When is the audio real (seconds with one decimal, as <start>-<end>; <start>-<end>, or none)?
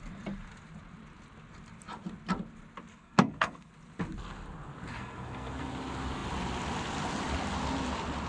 0.0-2.9; 3.7-4.9; 5.7-8.3